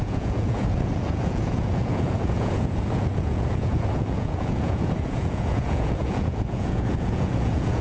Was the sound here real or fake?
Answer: fake